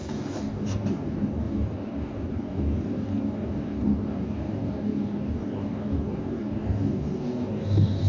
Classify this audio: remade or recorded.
remade